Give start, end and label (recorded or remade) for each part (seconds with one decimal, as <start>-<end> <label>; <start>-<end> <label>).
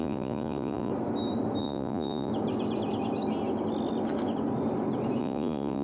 0.0-0.9 remade; 0.9-1.6 recorded; 1.6-2.3 remade; 2.3-5.2 recorded; 5.2-5.8 remade